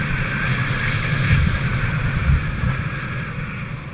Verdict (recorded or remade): recorded